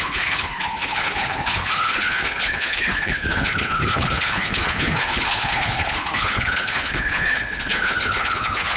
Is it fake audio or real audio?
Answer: fake